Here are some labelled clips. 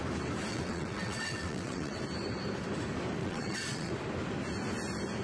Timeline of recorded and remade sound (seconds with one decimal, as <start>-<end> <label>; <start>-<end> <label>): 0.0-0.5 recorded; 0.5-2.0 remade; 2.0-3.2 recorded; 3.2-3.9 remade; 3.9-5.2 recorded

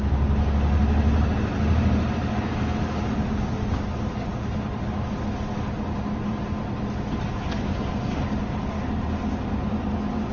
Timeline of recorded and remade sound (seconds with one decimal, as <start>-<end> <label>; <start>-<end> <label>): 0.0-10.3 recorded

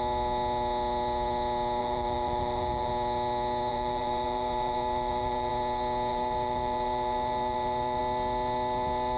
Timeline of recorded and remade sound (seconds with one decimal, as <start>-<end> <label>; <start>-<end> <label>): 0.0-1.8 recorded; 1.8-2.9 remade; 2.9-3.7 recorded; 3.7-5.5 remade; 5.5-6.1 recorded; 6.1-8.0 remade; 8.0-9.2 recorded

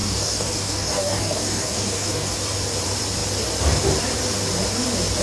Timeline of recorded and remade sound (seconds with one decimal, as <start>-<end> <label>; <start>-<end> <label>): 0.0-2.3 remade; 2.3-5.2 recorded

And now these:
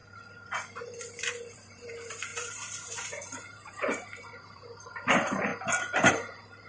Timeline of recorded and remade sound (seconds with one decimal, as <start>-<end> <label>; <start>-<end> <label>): 0.0-5.5 remade; 5.5-6.1 recorded; 6.1-6.7 remade

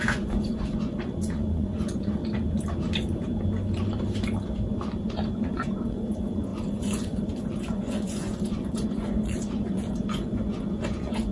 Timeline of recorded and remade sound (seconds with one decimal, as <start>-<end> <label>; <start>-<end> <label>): 0.0-2.2 remade; 2.2-5.4 recorded; 5.4-11.3 remade